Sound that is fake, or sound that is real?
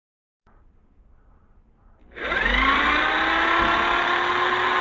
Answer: real